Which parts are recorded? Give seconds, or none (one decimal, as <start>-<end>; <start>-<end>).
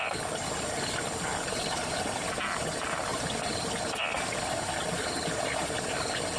0.0-6.4